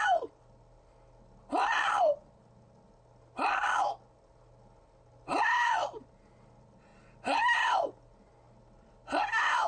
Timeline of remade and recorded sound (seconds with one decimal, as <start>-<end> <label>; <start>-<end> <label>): 0.0-9.7 recorded